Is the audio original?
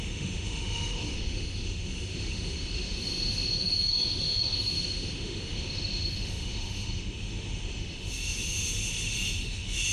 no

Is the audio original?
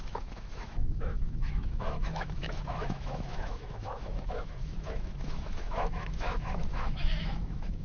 no